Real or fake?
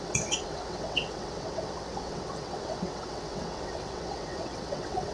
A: fake